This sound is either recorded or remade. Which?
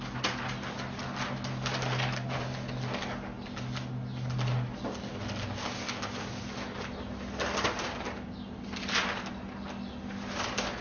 recorded